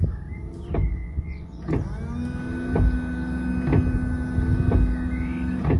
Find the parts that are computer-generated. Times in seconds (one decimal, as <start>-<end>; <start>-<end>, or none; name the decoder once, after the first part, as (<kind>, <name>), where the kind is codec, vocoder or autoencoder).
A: 1.0-1.6 (vocoder, Vocos)